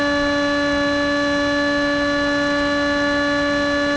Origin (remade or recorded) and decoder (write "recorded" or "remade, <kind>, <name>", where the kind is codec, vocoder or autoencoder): recorded